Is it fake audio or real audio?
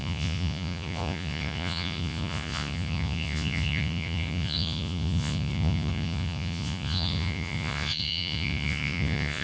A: fake